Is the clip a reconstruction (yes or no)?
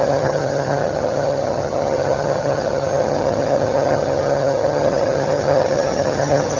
yes